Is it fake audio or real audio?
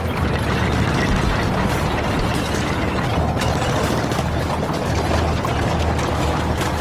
real